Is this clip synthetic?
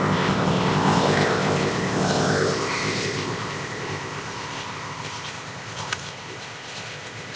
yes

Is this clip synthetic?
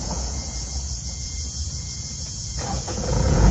yes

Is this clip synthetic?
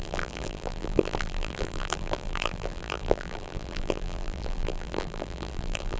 yes